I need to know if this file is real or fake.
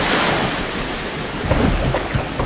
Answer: real